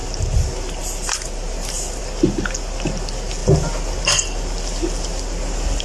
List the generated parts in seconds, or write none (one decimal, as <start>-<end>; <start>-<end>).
none